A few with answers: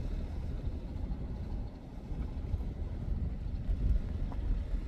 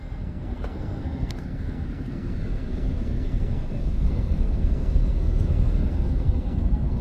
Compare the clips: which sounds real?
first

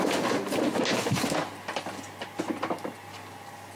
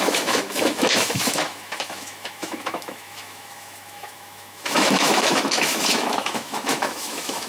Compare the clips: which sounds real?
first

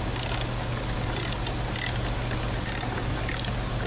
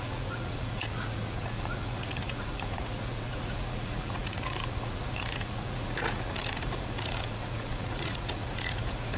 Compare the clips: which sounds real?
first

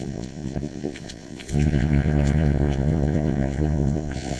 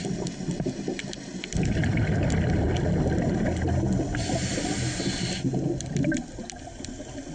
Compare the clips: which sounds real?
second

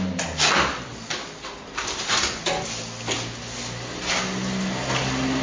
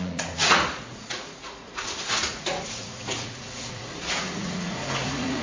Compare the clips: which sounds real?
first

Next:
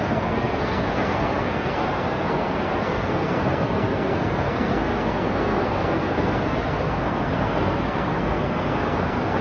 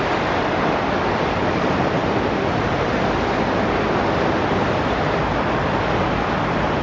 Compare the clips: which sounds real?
second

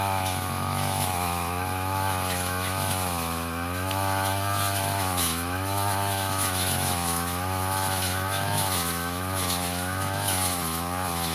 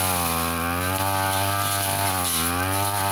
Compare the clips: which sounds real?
second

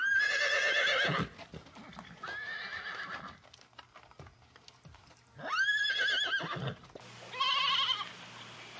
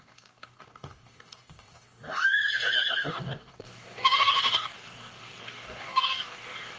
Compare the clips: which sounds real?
first